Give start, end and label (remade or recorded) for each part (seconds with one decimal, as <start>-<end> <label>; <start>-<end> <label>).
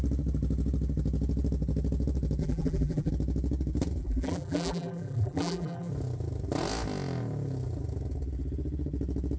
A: 0.0-2.4 recorded; 2.4-3.1 remade; 3.1-4.0 recorded; 4.0-5.9 remade; 5.9-9.4 recorded